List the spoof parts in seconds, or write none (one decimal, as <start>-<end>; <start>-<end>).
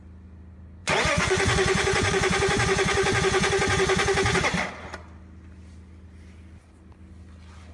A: 0.8-4.4